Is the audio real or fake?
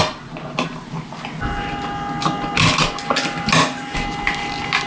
real